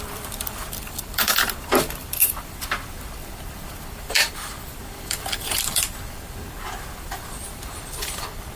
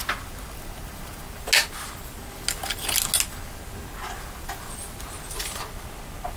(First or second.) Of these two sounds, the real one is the second